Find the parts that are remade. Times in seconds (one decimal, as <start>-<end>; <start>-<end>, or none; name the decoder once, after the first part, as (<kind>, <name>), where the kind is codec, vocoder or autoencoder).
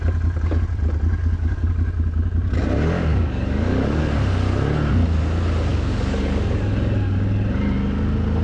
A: 1.2-1.7 (codec, DAC); 3.1-4.0; 5.7-6.6